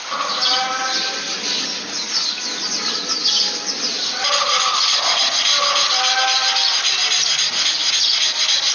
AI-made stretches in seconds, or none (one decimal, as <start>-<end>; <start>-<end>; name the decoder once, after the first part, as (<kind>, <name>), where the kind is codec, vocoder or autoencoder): none